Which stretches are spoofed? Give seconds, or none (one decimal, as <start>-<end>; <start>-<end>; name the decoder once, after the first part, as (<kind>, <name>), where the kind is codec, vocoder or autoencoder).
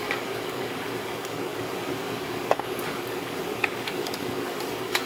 0.0-5.1 (codec, DAC)